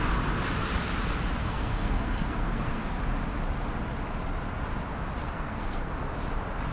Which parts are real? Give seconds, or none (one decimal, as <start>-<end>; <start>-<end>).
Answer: 0.0-1.4; 3.0-5.2; 5.9-6.7